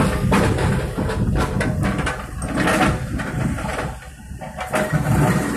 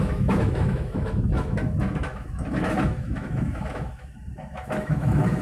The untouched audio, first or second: first